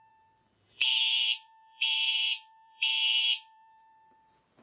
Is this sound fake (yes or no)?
yes